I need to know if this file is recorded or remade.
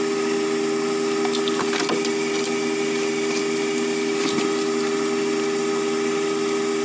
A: recorded